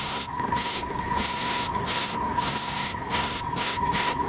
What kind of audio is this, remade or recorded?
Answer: remade